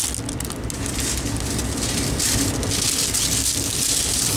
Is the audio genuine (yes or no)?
yes